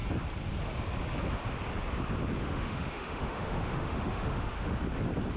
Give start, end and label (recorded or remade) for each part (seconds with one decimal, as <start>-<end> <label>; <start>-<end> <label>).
0.0-2.4 recorded; 2.4-4.7 remade; 4.7-5.4 recorded